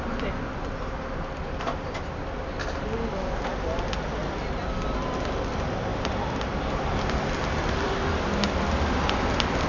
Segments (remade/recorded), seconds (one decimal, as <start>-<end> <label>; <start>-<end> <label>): 0.0-4.2 recorded; 4.2-5.2 remade; 5.2-5.9 recorded; 5.9-8.1 remade; 8.1-9.7 recorded